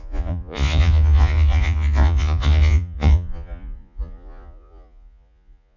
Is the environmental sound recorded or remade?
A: remade